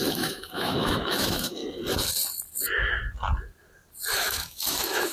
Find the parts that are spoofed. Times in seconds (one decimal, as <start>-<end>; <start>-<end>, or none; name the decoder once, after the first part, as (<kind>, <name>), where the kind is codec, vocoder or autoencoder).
0.0-1.6 (autoencoder, DAC-VAE); 4.1-5.1

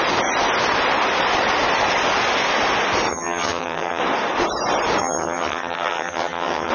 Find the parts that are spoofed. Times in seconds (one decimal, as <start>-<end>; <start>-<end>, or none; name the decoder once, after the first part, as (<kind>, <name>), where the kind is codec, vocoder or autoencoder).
3.1-4.0 (vocoder, HiFi-GAN); 5.0-6.7

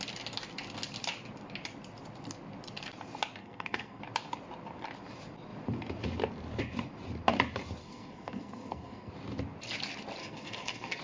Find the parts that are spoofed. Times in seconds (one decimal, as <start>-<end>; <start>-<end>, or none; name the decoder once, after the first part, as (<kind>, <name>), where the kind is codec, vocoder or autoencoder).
3.4-4.0 (codec, SNAC); 7.8-9.1; 10.2-11.0